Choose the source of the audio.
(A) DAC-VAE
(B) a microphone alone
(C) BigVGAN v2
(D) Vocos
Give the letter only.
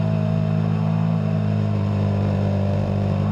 C